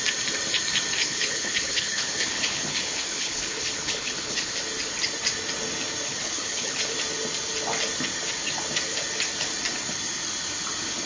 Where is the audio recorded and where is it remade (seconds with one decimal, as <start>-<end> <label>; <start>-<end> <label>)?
0.0-1.0 recorded; 1.0-4.5 remade; 4.5-6.1 recorded; 6.1-6.9 remade; 6.9-11.1 recorded